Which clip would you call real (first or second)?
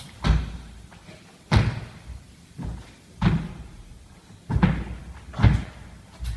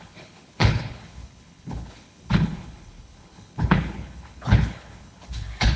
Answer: first